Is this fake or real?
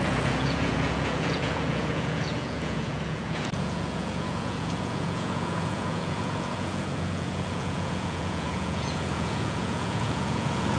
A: fake